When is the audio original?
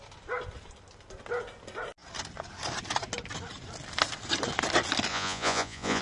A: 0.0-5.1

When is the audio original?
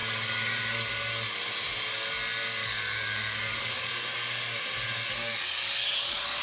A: 1.1-2.6; 3.9-5.0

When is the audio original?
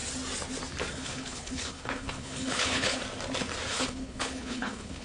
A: 0.0-0.9; 3.0-3.7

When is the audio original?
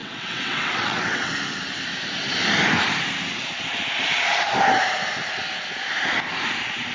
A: 1.3-6.9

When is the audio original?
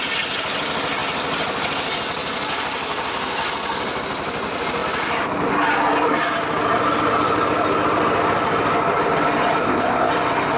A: 0.0-9.6; 10.1-10.6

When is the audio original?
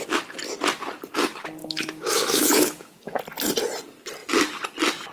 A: 0.0-1.6; 3.2-5.1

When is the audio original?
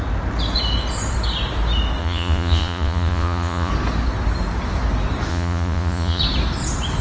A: 0.0-2.0; 3.7-5.3; 6.2-7.0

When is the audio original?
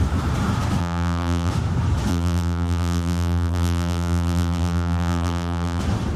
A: 0.0-0.8; 1.5-2.1; 5.8-6.2